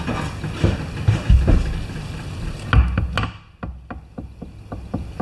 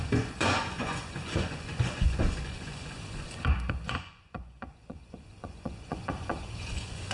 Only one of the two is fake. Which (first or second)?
second